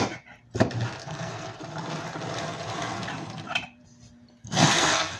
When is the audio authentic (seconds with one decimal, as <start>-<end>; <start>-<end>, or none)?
0.0-1.0; 1.6-4.4